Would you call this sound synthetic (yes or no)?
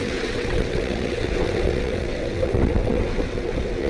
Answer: yes